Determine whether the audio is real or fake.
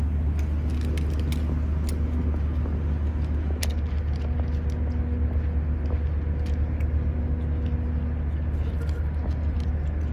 real